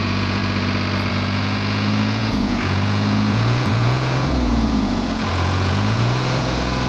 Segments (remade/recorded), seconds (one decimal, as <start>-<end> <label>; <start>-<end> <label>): 0.0-0.4 remade; 0.4-1.1 recorded; 1.1-6.9 remade